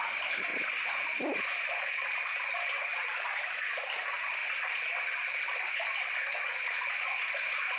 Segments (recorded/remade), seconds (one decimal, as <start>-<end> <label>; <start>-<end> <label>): 0.0-4.4 remade; 4.4-6.7 recorded; 6.7-7.8 remade